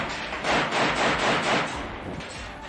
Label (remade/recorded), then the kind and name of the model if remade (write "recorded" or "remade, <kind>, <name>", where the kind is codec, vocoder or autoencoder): recorded